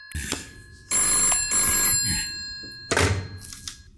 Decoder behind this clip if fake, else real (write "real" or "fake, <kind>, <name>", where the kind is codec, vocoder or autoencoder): real